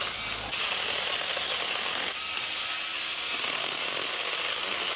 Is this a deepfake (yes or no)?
no